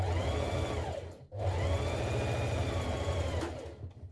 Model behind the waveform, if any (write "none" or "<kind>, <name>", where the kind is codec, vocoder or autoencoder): none